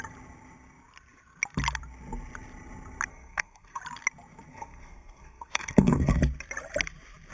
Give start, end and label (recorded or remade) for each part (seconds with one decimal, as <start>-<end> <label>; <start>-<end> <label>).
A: 0.0-3.1 recorded; 3.1-3.8 remade; 3.8-4.5 recorded; 4.5-6.2 remade; 6.2-7.3 recorded